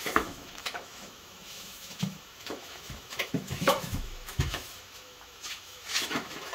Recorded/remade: remade